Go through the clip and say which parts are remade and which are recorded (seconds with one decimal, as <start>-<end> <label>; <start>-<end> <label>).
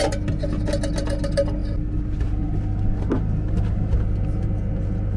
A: 0.0-5.2 recorded